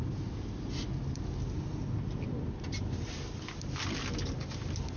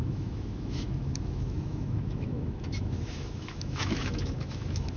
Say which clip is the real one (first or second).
first